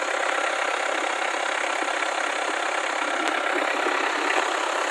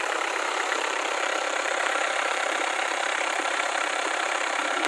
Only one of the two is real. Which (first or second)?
first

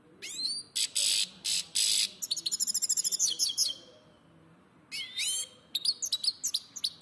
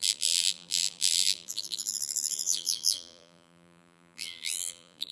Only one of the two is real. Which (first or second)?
first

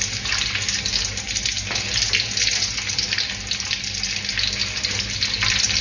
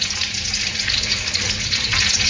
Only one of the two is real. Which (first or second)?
first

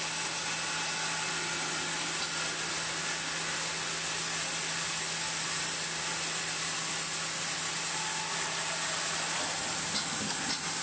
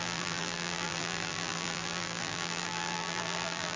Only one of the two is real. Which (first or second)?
first